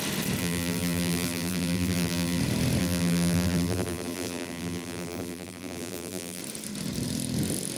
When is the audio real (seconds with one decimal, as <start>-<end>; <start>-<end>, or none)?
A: 0.0-0.4; 2.4-2.8; 6.4-7.8

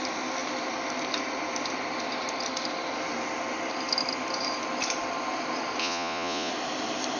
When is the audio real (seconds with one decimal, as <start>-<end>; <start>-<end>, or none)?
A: 0.0-5.8; 6.5-7.2

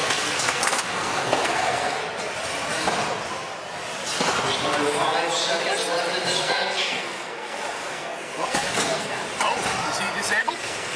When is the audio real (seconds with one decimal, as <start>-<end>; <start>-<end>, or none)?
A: 2.0-6.4; 9.2-10.4